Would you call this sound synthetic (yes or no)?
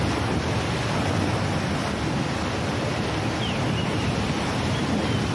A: no